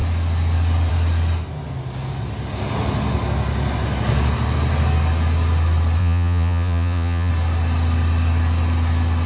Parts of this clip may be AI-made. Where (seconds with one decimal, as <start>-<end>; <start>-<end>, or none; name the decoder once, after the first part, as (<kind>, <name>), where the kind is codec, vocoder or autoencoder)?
6.0-7.3 (vocoder, Vocos)